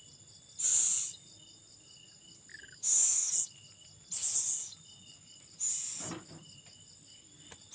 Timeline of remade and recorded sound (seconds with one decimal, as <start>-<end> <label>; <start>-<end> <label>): 0.0-2.5 recorded; 2.5-3.3 remade; 3.3-7.7 recorded